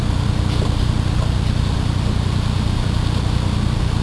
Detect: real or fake real